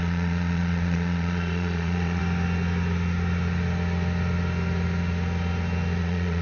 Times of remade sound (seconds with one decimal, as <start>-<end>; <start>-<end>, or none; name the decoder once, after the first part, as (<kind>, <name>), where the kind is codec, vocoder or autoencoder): 0.0-2.2 (vocoder, Vocos); 6.0-6.4